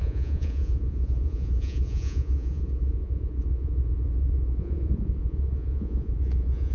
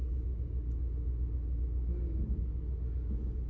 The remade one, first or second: first